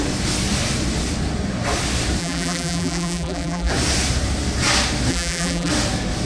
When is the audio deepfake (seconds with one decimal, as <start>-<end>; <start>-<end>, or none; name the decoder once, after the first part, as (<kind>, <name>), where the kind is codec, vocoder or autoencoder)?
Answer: 2.2-3.7 (vocoder, BigVGAN v2); 5.1-5.7